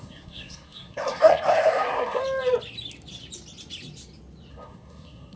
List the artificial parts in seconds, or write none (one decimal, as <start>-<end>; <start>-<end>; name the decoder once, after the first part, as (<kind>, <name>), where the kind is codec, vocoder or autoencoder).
0.0-2.2 (codec, SNAC); 4.5-5.4